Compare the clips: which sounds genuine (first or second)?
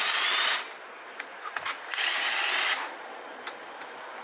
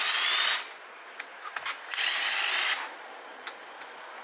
second